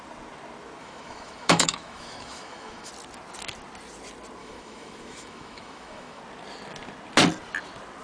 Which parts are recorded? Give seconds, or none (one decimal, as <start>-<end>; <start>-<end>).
0.0-0.8; 2.9-4.4; 6.2-8.0